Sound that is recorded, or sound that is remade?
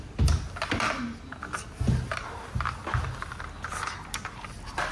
recorded